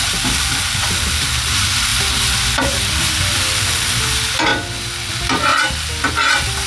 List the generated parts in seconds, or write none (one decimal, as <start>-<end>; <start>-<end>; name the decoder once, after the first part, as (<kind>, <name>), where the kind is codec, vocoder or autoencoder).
none